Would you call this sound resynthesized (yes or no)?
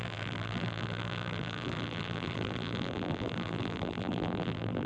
yes